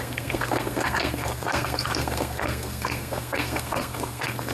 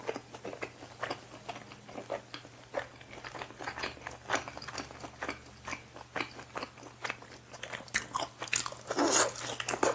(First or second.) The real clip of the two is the second